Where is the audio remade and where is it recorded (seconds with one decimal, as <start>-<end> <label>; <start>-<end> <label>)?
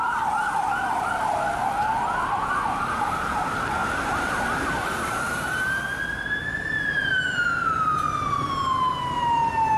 0.0-3.8 recorded; 3.8-8.4 remade; 8.4-9.8 recorded